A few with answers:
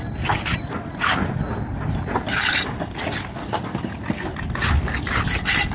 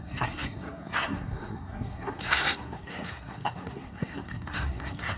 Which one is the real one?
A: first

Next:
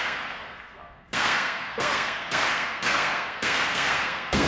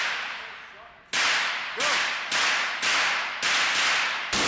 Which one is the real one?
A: second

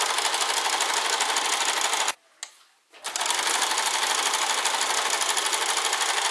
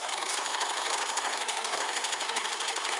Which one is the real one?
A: first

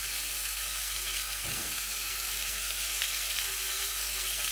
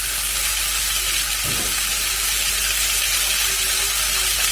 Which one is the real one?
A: second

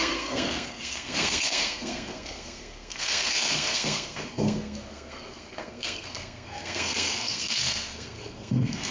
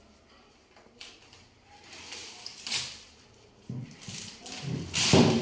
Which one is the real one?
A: second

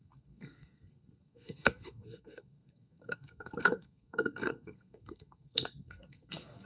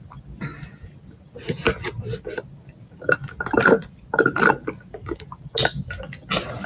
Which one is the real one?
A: second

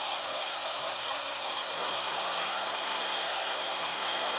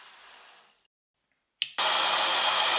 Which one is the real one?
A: second